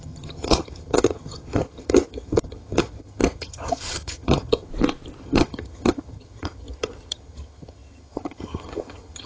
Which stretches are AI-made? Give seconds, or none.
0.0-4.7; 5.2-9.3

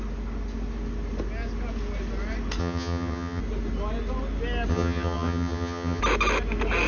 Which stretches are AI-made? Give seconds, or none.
2.6-3.4; 4.7-6.0

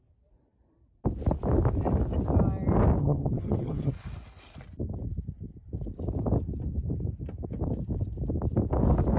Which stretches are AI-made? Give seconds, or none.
3.0-3.9